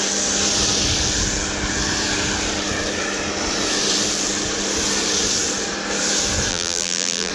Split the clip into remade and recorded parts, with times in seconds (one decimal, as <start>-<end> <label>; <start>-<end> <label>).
0.0-6.5 recorded; 6.5-7.3 remade

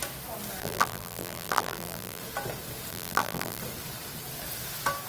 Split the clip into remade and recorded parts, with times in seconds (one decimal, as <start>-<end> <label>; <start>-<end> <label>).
0.0-0.6 recorded; 0.6-2.2 remade; 2.2-2.9 recorded; 2.9-3.6 remade; 3.6-5.1 recorded

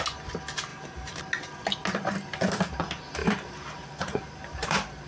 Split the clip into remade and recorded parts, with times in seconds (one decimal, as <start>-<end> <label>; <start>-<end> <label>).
0.0-0.7 recorded; 0.7-1.2 remade; 1.2-3.2 recorded; 3.2-5.1 remade